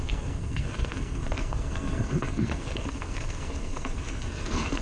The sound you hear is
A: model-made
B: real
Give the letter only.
A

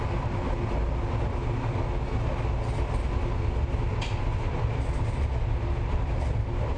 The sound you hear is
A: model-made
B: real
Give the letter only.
B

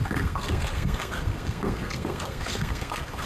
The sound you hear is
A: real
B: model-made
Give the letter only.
B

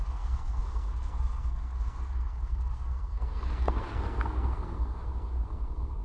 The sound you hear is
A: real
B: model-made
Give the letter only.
B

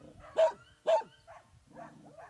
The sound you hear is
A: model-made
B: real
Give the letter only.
B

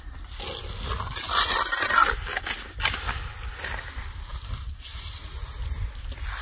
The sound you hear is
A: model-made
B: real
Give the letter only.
B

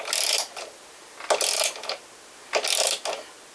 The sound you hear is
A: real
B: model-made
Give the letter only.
A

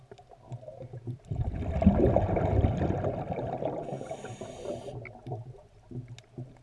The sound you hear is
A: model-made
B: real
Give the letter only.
B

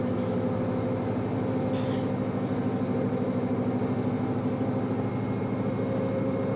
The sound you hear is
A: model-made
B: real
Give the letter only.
B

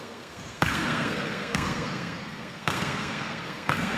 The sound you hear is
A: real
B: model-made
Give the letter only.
B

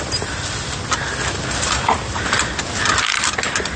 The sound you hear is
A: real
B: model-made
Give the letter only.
A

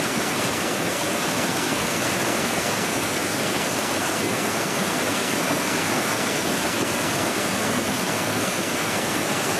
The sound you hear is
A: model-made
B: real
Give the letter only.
A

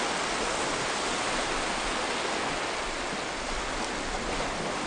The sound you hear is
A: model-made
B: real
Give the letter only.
B